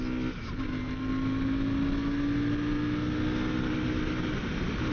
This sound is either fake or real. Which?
real